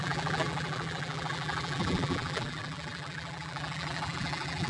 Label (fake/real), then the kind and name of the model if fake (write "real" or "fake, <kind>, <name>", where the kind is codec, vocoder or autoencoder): fake, vocoder, BigVGAN v2